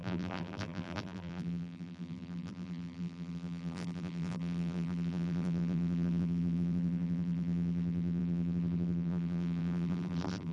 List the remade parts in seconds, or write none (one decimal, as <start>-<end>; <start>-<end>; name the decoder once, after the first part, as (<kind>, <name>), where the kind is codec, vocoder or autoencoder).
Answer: 0.0-10.5 (vocoder, BigVGAN v2)